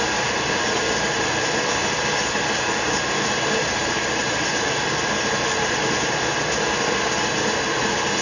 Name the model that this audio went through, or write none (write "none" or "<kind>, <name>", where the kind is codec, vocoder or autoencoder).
none